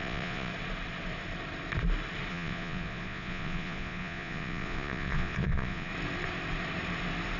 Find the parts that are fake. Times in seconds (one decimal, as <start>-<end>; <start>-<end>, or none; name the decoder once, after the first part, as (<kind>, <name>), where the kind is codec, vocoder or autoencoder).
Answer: 0.0-0.5 (vocoder, Vocos); 2.3-5.9